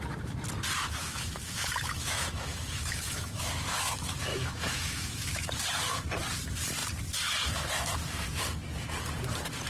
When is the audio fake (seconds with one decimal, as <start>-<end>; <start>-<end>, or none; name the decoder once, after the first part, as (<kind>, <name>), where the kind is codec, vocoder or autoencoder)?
1.0-3.8 (autoencoder, DAC-VAE); 4.3-5.5

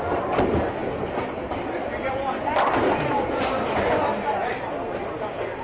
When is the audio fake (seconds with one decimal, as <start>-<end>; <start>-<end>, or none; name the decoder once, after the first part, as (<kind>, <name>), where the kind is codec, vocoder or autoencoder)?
none